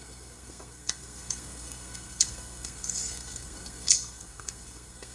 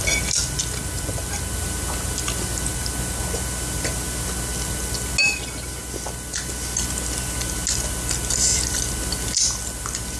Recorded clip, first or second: second